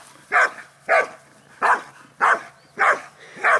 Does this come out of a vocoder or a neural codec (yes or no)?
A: no